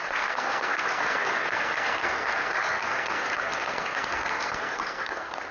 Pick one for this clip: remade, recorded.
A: remade